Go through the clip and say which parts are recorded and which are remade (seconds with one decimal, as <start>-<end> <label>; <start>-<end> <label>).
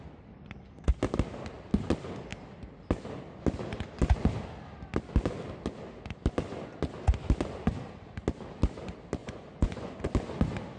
0.0-9.2 recorded; 9.2-10.1 remade; 10.1-10.8 recorded